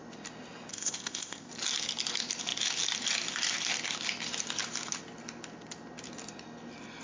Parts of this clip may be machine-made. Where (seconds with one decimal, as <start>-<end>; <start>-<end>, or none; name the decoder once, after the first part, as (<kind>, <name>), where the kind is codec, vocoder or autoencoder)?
0.7-1.5 (codec, ZipCodec)